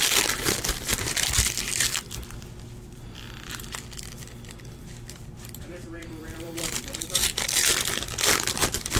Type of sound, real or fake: fake